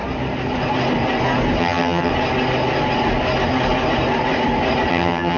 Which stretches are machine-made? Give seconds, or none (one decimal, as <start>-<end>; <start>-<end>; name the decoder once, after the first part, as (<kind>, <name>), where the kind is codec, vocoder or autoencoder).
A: 1.6-2.1 (vocoder, HiFi-GAN); 4.9-5.4